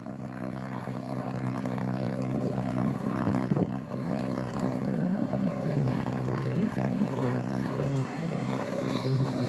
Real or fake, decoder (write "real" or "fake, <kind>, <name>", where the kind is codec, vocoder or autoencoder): fake, codec, SNAC